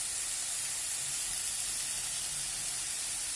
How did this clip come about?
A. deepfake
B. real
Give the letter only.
B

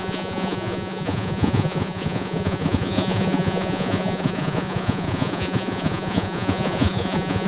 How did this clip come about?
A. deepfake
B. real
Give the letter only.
A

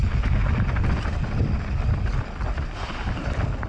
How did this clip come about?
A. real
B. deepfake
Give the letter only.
A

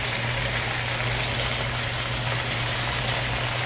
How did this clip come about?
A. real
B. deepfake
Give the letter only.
A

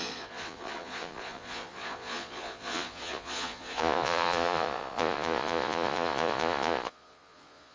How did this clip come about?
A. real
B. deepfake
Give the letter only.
B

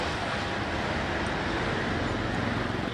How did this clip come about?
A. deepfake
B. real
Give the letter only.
B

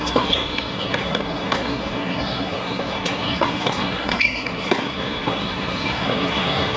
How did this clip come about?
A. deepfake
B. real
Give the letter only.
A